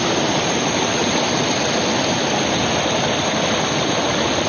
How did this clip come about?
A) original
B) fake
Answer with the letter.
A